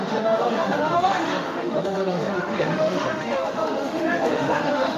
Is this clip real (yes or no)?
no